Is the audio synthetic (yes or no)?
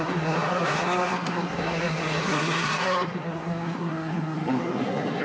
yes